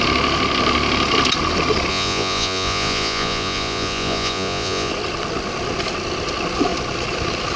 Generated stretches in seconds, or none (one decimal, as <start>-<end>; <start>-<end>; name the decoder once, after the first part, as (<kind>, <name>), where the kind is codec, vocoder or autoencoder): 1.9-4.9 (vocoder, Vocos)